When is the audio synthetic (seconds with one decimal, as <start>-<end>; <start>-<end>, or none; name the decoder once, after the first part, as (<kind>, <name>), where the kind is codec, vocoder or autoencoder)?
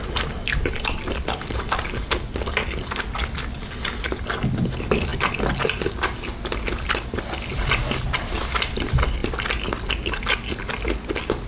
none